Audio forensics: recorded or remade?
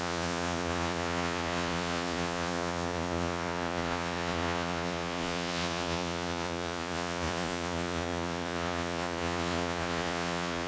remade